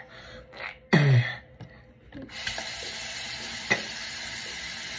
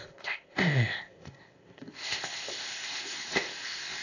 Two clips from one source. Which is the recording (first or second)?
first